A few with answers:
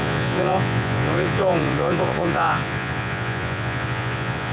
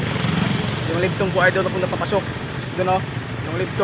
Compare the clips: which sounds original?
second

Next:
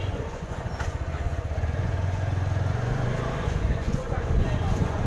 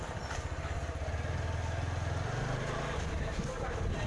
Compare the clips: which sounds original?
second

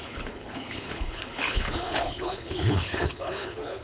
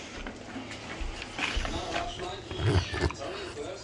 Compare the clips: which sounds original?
second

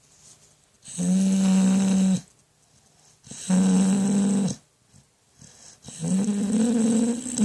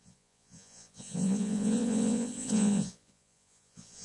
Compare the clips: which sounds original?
first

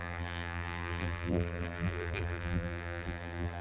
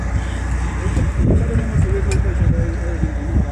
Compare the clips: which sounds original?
second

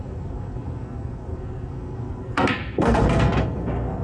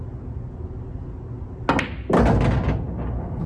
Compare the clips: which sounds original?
second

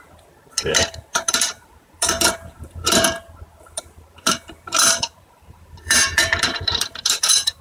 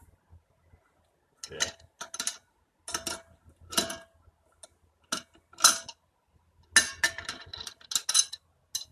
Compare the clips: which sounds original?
second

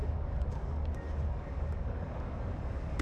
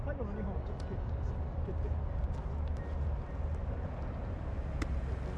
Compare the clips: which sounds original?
second